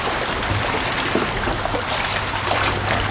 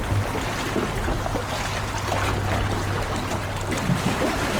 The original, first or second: second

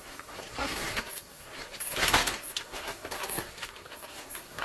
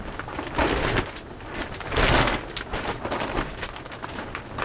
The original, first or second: second